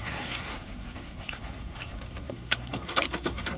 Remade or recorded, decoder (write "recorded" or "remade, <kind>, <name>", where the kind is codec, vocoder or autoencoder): remade, codec, SNAC